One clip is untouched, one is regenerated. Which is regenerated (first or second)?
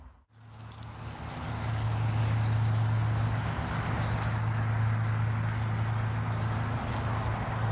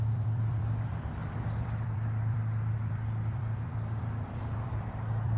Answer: second